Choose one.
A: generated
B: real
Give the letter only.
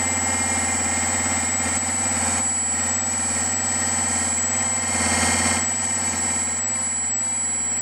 B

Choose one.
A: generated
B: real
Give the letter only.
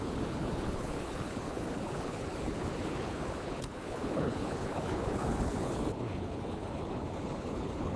A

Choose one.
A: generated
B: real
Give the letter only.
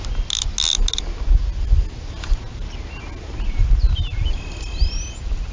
B